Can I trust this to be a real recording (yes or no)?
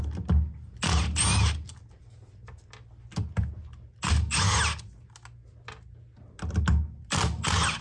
yes